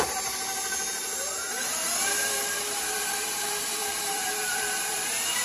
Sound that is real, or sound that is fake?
fake